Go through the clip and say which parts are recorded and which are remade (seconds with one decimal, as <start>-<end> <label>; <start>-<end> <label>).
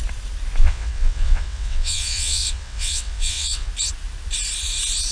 0.0-0.6 recorded; 0.6-3.7 remade; 3.7-5.1 recorded